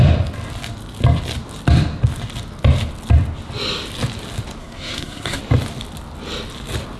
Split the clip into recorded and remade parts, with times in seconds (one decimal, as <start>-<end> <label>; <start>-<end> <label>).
0.0-4.6 recorded; 4.6-5.4 remade; 5.4-7.0 recorded

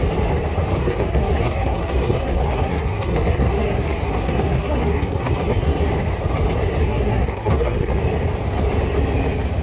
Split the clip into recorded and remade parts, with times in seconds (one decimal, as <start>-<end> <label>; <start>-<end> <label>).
0.0-0.8 recorded; 0.8-5.9 remade; 5.9-6.8 recorded; 6.8-8.0 remade; 8.0-9.6 recorded

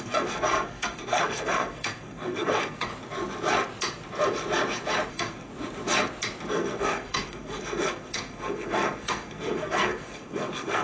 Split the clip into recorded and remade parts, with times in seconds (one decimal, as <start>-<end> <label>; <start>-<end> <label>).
0.0-2.9 remade; 2.9-5.1 recorded; 5.1-5.5 remade; 5.5-6.5 recorded; 6.5-10.8 remade

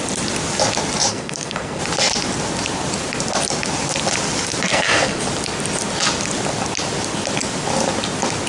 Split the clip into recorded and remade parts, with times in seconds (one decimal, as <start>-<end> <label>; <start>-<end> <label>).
0.0-1.1 recorded; 1.1-1.8 remade; 1.8-4.7 recorded; 4.7-5.2 remade; 5.2-8.5 recorded